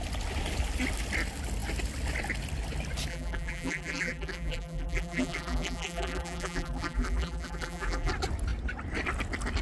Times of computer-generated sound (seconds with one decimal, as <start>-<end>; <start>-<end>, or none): 3.1-8.1